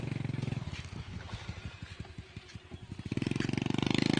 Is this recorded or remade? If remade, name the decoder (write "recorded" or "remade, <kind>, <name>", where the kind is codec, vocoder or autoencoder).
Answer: recorded